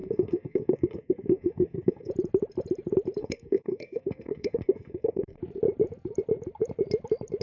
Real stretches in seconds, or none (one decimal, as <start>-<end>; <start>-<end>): 2.1-3.2; 5.4-7.4

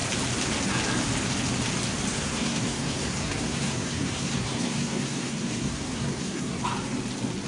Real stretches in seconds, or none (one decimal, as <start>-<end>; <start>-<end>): 0.0-2.1; 6.6-7.5

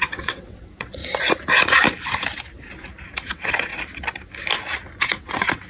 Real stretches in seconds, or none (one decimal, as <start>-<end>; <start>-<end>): 1.0-3.3; 3.7-5.0

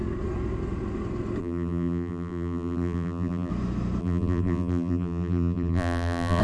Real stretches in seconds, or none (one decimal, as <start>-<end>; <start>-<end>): 0.0-1.4; 3.5-4.0